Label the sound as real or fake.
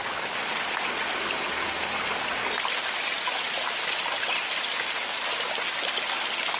real